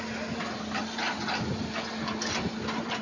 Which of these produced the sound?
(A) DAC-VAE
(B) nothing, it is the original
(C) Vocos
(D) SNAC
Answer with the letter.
B